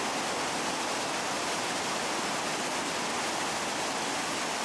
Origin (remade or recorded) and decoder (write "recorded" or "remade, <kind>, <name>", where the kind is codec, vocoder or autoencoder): recorded